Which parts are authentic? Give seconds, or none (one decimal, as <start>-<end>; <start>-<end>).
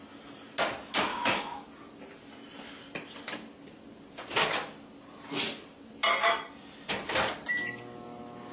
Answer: 0.0-1.1; 1.7-8.5